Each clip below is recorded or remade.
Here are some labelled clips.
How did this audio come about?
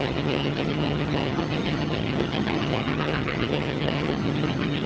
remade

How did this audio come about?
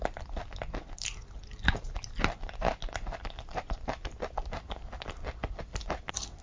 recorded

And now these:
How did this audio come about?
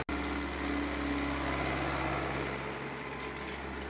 recorded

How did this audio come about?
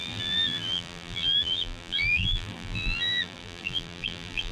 remade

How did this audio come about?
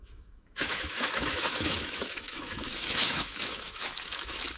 remade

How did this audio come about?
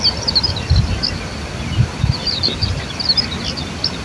recorded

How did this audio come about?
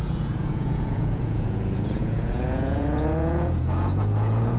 remade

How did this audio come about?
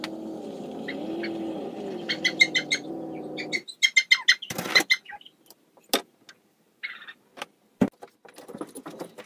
recorded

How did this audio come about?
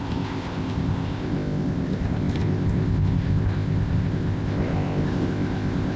remade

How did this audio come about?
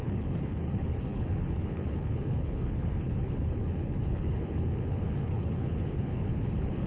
remade